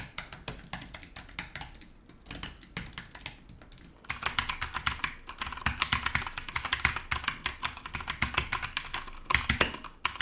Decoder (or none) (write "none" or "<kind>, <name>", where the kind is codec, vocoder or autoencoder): none